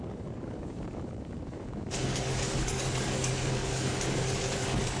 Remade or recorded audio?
remade